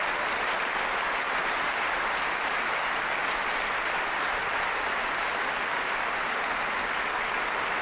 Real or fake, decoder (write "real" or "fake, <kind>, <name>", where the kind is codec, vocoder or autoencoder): real